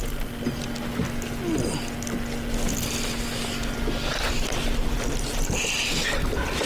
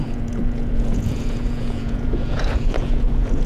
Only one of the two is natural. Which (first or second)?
first